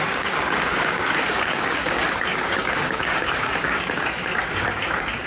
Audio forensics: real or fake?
fake